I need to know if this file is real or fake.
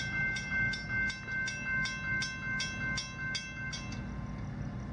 real